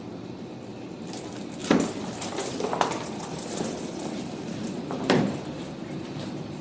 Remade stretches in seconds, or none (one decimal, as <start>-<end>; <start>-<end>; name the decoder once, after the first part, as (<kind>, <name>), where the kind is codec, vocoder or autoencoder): 1.6-5.6 (vocoder, BigVGAN v2)